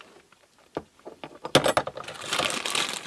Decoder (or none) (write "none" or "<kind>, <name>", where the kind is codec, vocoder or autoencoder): none